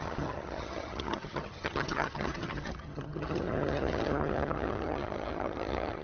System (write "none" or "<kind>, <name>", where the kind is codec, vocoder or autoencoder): vocoder, HiFi-GAN